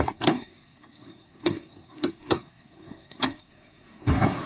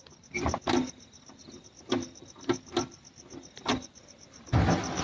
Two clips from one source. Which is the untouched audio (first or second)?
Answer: second